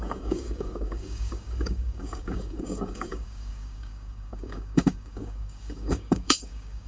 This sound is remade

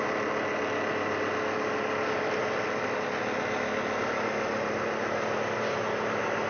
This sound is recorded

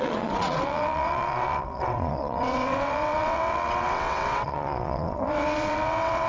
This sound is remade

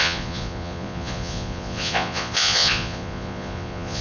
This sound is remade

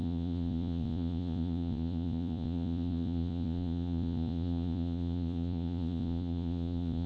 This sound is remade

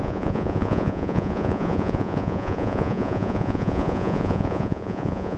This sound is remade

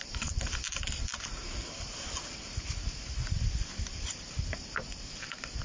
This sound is remade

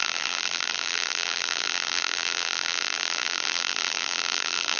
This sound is remade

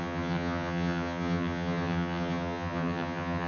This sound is remade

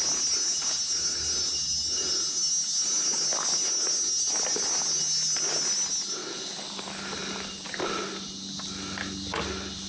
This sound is recorded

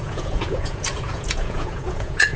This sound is remade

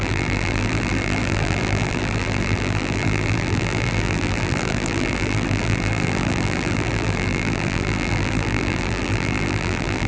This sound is remade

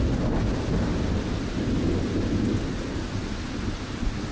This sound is recorded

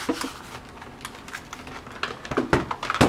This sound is recorded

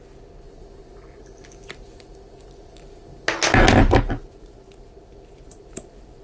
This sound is recorded